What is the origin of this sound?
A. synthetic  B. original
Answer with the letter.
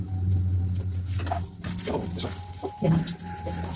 B